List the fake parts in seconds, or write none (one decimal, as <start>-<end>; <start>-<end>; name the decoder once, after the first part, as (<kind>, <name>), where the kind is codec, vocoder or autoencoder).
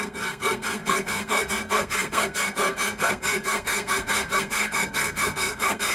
0.0-5.9 (codec, SNAC)